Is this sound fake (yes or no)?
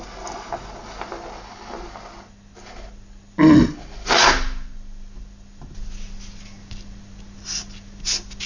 no